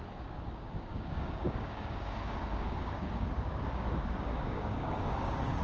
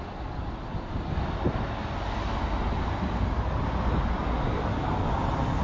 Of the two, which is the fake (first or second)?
first